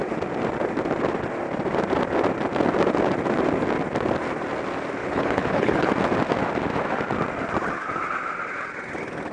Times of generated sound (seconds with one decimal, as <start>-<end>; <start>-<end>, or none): 5.0-5.9